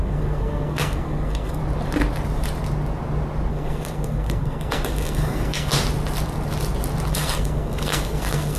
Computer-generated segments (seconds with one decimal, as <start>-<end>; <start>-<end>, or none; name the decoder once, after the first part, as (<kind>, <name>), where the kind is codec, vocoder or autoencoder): 0.0-1.6 (codec, SNAC); 3.5-5.7; 7.1-8.6

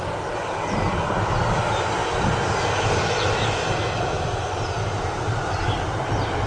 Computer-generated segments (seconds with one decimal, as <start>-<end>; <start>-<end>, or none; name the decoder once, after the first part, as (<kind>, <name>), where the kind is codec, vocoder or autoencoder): none

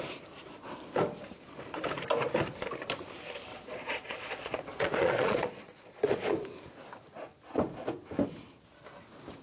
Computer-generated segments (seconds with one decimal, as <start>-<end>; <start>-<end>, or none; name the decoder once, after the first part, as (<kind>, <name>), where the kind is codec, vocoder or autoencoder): 3.5-6.3 (vocoder, Vocos)

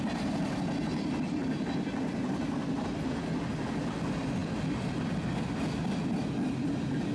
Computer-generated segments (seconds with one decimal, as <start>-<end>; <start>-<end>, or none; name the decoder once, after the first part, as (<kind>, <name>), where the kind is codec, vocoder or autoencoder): none

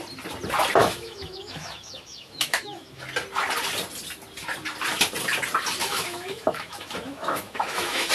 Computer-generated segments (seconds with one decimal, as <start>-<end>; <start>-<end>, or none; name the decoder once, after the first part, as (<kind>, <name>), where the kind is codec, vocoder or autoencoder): 0.8-3.0 (autoencoder, DAC-VAE); 5.8-8.1

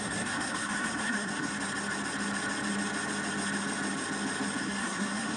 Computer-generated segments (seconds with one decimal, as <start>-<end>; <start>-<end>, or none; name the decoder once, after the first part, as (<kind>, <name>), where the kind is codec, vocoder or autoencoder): 0.0-1.5 (codec, SNAC); 4.6-5.4